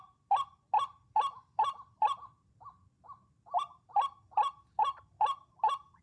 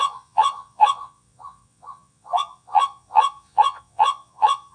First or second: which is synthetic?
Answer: second